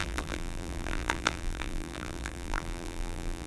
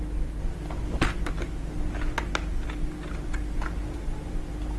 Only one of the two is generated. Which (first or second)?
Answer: first